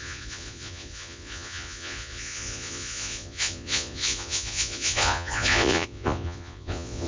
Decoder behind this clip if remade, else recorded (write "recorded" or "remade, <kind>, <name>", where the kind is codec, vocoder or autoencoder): remade, vocoder, Vocos